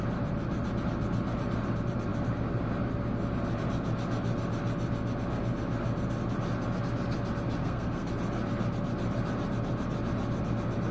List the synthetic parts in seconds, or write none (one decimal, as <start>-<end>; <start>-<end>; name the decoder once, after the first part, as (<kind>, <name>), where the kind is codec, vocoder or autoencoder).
7.6-8.1 (codec, SNAC)